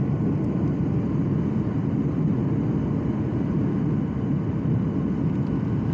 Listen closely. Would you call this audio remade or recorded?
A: recorded